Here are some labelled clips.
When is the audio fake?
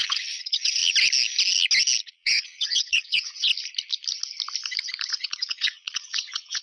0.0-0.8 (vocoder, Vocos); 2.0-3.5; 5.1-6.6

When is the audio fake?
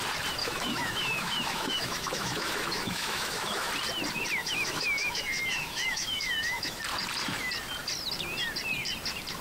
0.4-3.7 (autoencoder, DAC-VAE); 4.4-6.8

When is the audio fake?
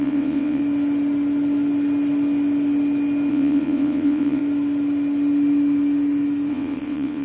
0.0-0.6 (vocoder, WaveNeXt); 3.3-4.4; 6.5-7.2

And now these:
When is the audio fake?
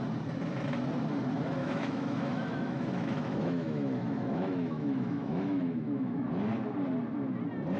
1.6-6.3 (autoencoder, DAC-VAE)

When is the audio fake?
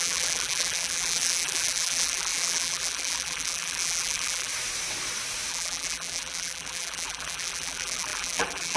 0.0-4.5 (vocoder, BigVGAN v2); 5.5-8.8